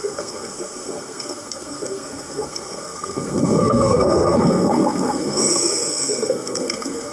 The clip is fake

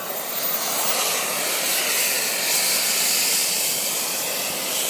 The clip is real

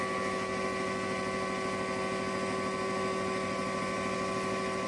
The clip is real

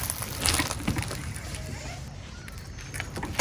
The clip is real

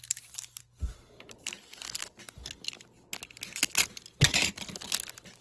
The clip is real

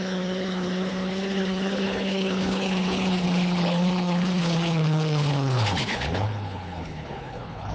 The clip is fake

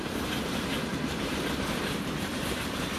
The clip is fake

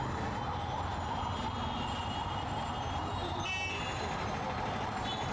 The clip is real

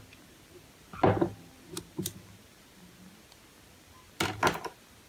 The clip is real